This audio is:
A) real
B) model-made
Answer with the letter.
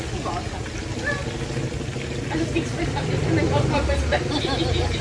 A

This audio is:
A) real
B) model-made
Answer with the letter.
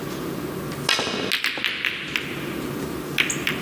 A